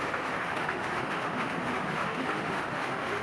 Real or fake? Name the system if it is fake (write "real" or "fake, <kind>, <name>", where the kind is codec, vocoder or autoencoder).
fake, autoencoder, DAC-VAE